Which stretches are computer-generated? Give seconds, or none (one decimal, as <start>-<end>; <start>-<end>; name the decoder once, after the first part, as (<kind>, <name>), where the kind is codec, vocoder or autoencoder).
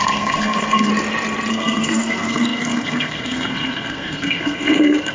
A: 0.0-0.9 (codec, SNAC); 1.5-5.1